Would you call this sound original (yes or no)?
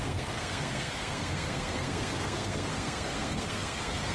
no